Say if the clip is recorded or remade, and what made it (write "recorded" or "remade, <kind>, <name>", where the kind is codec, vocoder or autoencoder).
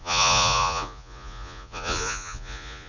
remade, vocoder, Vocos